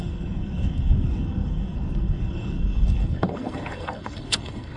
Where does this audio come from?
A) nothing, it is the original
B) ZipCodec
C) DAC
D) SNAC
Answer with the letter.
D